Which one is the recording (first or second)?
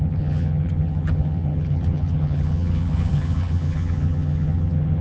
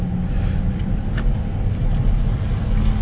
second